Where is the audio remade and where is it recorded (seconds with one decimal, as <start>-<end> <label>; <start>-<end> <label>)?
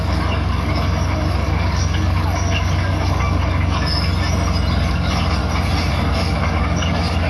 0.0-4.1 remade; 4.1-4.9 recorded; 4.9-5.4 remade; 5.4-5.9 recorded; 5.9-7.3 remade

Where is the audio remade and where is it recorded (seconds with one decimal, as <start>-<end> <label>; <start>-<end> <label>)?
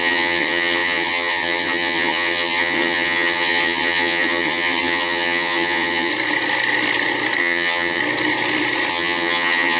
0.0-6.1 remade; 6.1-7.4 recorded; 7.4-8.0 remade; 8.0-8.9 recorded; 8.9-9.8 remade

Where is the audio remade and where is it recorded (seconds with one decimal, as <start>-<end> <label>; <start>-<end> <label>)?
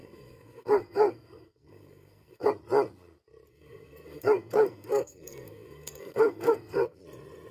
0.0-2.5 remade; 2.5-3.5 recorded; 3.5-7.0 remade; 7.0-7.5 recorded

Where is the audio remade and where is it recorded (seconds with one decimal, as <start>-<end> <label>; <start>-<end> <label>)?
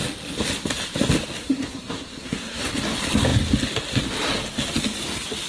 0.0-1.4 recorded; 1.4-2.6 remade; 2.6-5.5 recorded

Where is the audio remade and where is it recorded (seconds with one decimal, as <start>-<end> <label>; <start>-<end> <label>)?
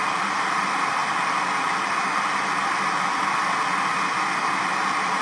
0.0-5.2 recorded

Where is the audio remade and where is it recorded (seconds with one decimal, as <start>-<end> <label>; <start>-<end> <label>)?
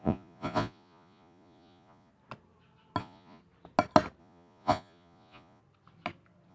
0.0-2.1 remade; 2.1-3.0 recorded; 3.0-3.4 remade; 3.4-4.2 recorded; 4.2-5.6 remade; 5.6-6.5 recorded